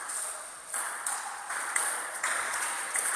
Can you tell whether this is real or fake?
fake